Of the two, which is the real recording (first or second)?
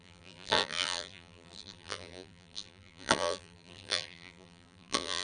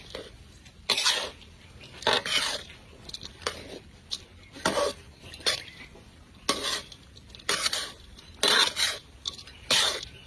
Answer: second